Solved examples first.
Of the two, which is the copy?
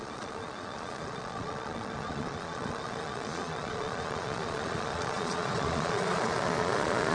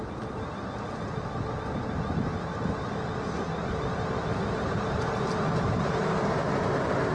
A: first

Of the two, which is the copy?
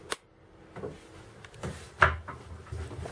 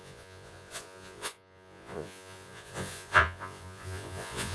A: second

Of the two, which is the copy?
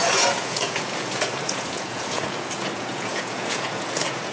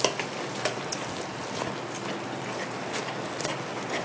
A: first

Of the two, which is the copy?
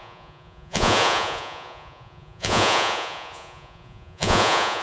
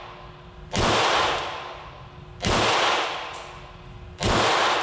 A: first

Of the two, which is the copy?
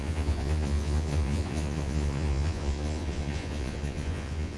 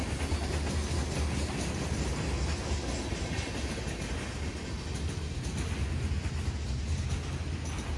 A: first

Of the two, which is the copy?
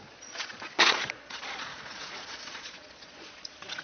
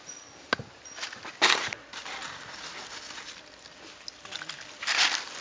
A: first